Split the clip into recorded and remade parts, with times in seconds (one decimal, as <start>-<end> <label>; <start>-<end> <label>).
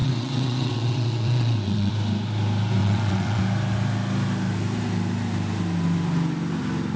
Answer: 0.0-1.9 remade; 1.9-2.8 recorded; 2.8-3.4 remade; 3.4-7.0 recorded